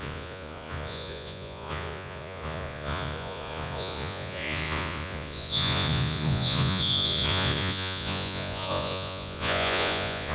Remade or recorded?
remade